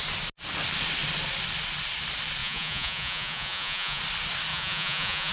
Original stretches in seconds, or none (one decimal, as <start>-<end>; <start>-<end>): 0.0-2.4; 4.0-4.5